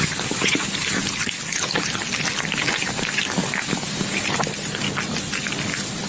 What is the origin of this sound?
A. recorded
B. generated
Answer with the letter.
A